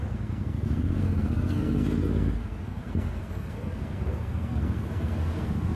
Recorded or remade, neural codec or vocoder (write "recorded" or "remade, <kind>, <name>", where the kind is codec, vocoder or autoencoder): remade, codec, SNAC